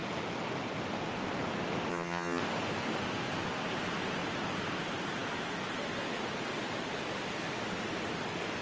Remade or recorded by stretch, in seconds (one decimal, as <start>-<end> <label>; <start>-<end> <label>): 0.0-1.9 recorded; 1.9-2.4 remade; 2.4-8.6 recorded